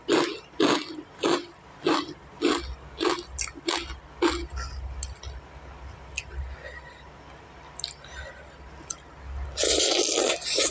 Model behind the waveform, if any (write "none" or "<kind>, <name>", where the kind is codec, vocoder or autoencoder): none